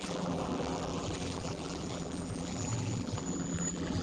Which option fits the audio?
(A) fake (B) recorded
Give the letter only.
A